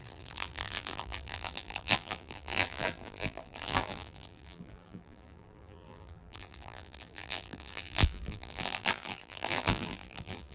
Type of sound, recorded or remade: remade